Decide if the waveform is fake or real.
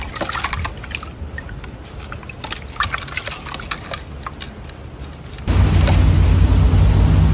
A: real